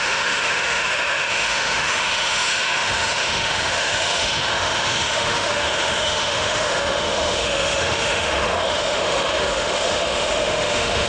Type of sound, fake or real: fake